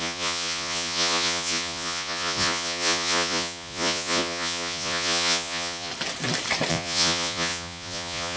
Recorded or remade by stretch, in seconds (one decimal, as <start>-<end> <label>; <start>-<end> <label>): 0.0-5.9 remade; 5.9-6.7 recorded; 6.7-8.4 remade